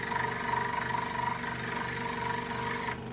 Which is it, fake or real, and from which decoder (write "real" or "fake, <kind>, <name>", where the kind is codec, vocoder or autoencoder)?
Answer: real